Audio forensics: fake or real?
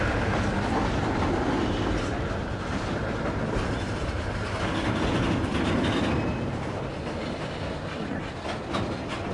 real